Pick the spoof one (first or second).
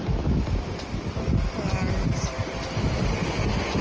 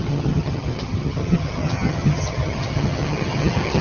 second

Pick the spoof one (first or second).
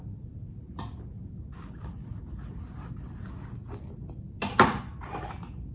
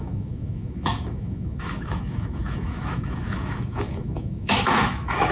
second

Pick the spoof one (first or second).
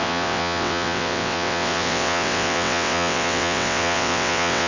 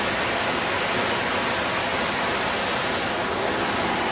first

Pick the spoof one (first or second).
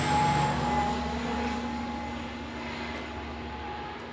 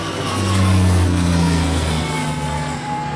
second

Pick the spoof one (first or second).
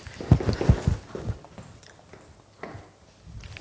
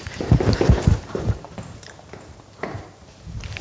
second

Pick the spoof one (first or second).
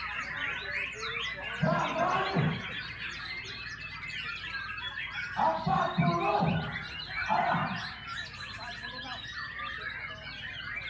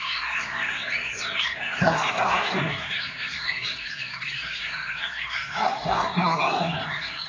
second